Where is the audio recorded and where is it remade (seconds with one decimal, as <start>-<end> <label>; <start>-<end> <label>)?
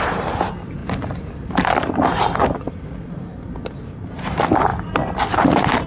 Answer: 0.0-5.9 recorded